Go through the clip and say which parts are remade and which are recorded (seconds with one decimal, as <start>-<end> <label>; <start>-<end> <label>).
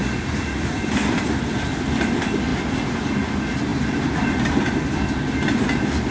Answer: 0.0-2.5 recorded; 2.5-3.2 remade; 3.2-3.7 recorded; 3.7-4.7 remade; 4.7-6.1 recorded